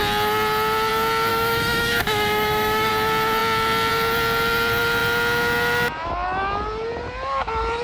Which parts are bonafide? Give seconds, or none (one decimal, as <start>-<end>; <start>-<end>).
0.0-1.3; 2.9-7.8